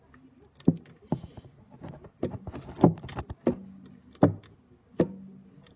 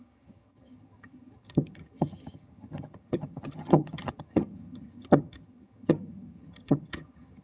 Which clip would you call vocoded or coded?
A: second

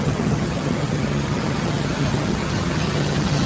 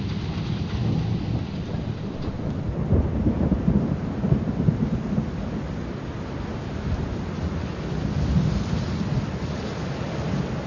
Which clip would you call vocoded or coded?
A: first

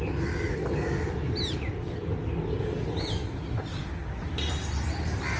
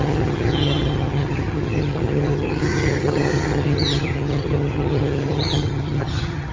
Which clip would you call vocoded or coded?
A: second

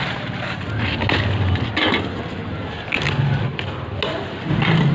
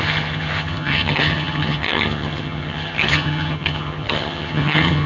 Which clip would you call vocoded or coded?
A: second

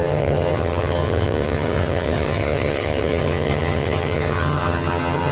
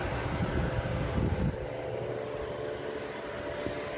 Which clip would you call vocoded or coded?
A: first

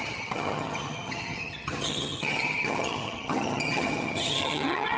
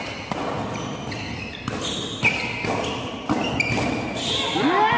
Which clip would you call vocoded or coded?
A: first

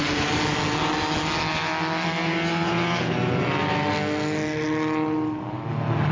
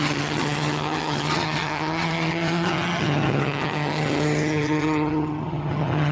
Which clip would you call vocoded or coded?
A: second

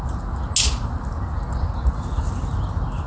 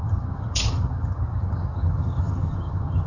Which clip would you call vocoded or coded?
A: second